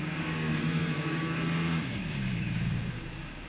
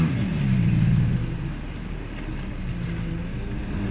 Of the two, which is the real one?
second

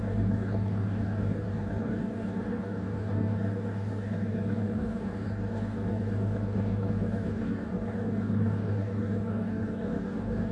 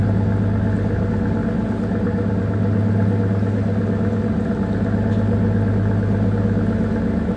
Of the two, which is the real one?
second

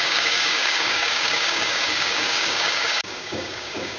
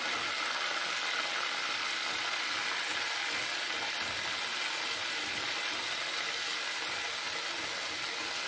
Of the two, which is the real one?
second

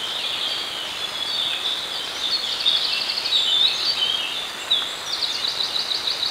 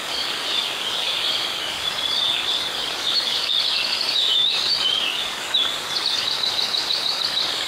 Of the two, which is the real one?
first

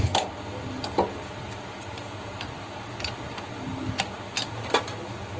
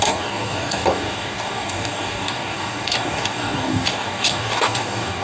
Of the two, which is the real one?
first